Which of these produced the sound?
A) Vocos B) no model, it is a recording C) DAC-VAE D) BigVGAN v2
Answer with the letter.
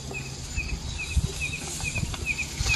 B